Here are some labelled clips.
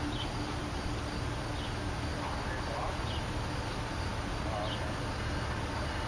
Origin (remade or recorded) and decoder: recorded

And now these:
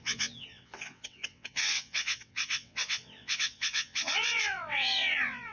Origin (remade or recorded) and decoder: remade, vocoder, WaveNeXt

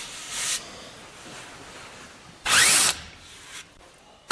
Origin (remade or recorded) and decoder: recorded